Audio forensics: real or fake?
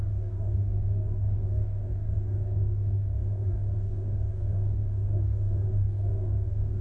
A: fake